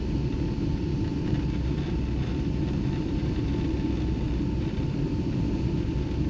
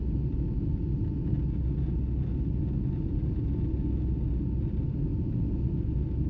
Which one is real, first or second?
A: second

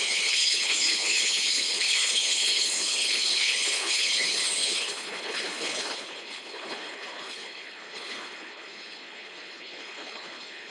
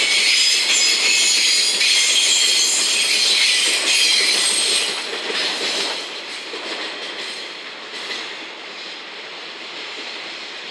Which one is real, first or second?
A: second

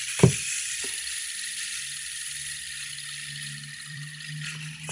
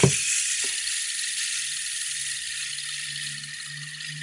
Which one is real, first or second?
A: second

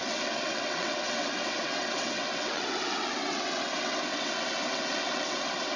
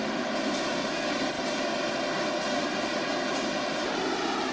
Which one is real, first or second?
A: second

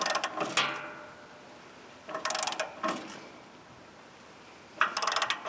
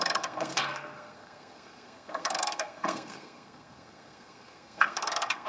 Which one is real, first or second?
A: first